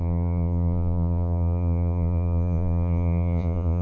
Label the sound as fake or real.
fake